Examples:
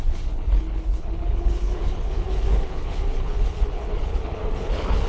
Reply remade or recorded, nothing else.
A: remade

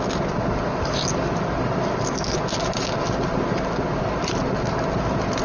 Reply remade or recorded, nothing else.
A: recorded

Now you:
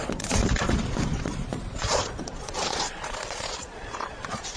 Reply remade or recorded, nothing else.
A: remade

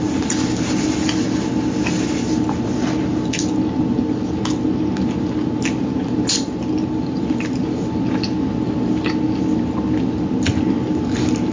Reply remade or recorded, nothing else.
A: recorded